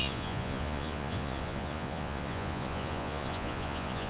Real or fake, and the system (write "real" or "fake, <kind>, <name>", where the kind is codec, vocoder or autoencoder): fake, vocoder, Vocos